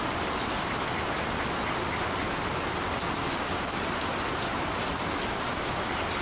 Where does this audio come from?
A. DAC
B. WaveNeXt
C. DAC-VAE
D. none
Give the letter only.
D